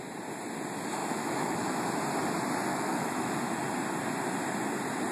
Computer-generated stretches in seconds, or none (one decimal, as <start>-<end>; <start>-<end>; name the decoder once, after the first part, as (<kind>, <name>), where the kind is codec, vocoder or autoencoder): 1.0-1.9 (autoencoder, DAC-VAE); 2.7-3.6

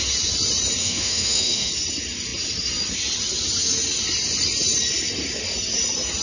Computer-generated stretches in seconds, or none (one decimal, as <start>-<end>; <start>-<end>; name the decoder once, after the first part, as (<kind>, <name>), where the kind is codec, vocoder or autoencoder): 0.8-1.7 (autoencoder, DAC-VAE)

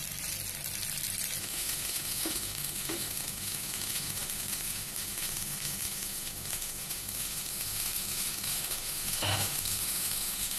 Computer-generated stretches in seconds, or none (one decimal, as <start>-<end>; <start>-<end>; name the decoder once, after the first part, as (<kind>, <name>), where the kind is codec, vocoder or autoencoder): 1.4-10.6 (autoencoder, DAC-VAE)

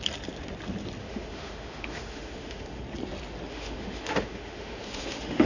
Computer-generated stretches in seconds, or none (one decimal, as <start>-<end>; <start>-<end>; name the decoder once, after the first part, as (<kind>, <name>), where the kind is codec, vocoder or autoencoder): 1.0-2.8 (autoencoder, DAC-VAE); 3.5-5.5

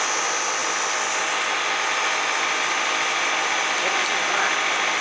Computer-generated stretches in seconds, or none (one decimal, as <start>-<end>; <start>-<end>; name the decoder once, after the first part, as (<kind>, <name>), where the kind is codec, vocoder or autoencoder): none

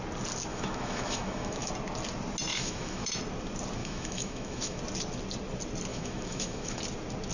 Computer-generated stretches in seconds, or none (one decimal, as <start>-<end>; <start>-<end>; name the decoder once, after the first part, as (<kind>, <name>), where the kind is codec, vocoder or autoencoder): 0.5-1.7 (autoencoder, DAC-VAE); 2.5-3.2; 3.8-4.8; 5.9-6.8

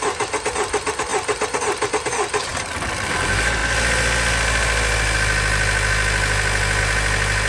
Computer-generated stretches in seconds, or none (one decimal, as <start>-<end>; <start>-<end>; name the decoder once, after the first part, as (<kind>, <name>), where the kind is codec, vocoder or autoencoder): none

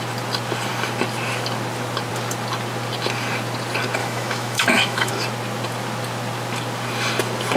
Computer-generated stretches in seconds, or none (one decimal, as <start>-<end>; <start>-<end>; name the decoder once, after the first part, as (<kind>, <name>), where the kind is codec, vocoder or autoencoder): 4.0-5.1 (autoencoder, DAC-VAE)